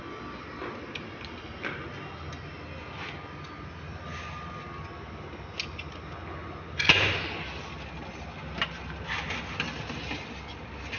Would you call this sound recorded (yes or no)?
yes